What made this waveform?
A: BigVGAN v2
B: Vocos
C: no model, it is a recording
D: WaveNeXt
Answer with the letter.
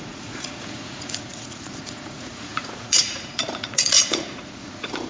B